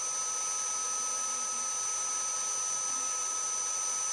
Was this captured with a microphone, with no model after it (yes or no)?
yes